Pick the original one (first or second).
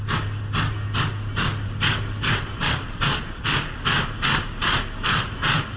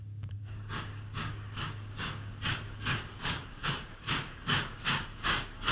first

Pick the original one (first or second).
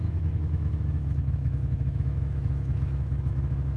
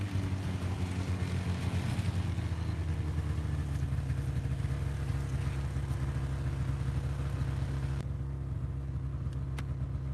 second